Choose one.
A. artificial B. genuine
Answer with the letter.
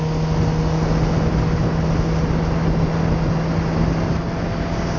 B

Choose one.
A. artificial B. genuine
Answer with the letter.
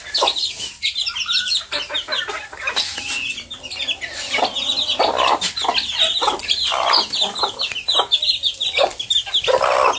B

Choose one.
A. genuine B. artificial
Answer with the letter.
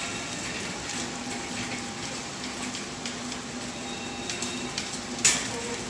A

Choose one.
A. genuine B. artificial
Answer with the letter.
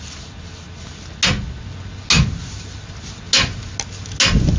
A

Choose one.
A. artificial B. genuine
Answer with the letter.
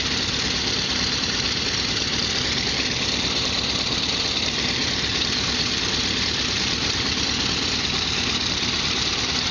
A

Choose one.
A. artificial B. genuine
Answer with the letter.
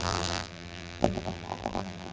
A